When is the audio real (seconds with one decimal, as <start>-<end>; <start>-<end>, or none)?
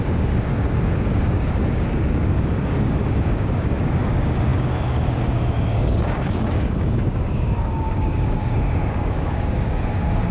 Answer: none